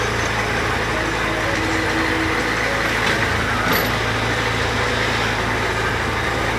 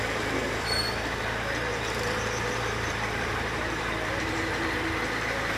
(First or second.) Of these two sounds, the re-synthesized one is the second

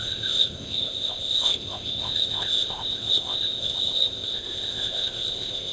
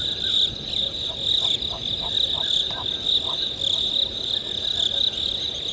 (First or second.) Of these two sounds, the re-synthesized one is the first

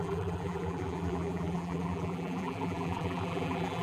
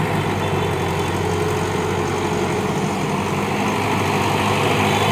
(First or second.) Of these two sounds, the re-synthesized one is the first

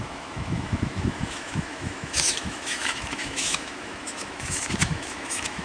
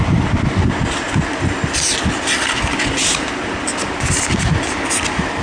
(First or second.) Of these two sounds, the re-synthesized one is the first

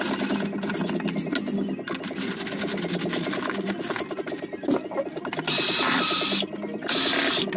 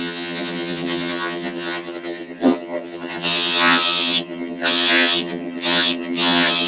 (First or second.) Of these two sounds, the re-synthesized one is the second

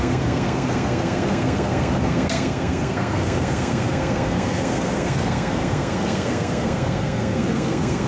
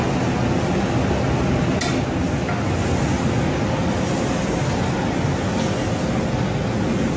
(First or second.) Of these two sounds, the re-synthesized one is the first